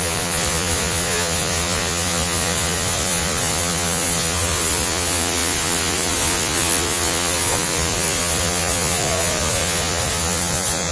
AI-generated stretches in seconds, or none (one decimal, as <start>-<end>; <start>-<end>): 0.0-10.9